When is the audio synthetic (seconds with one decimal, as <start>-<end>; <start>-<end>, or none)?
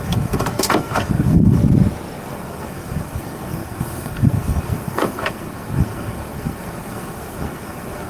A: 0.0-1.6; 2.2-8.1